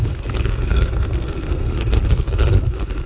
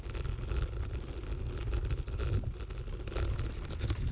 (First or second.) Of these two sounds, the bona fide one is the second